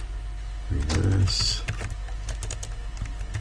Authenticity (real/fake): real